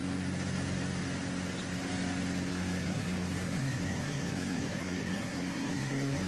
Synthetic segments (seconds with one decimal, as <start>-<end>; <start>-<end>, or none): 2.5-6.3